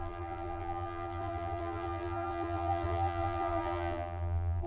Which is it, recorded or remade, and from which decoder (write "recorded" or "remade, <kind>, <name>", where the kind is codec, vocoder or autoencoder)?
remade, vocoder, BigVGAN v2